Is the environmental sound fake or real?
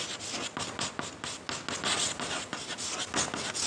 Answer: real